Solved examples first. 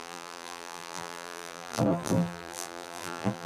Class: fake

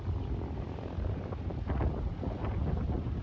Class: real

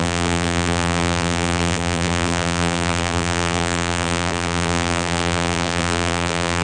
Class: fake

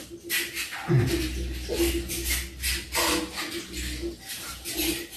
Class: real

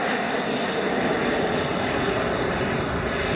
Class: real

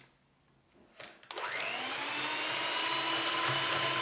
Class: real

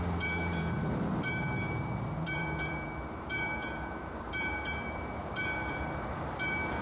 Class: fake